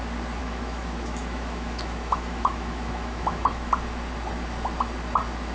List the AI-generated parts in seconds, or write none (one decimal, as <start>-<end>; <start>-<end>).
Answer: 0.4-3.7